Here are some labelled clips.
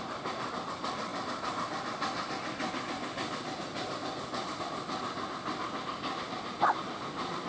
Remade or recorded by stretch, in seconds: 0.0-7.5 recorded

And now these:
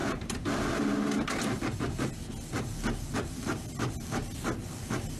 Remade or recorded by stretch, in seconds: 0.0-0.5 remade; 0.5-5.2 recorded

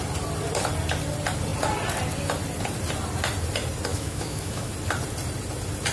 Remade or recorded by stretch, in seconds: 0.0-3.9 recorded; 3.9-4.7 remade; 4.7-5.9 recorded

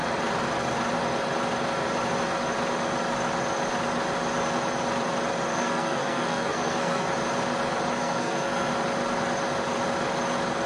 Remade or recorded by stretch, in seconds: 0.0-5.5 recorded; 5.5-7.1 remade; 7.1-8.0 recorded; 8.0-8.7 remade; 8.7-10.7 recorded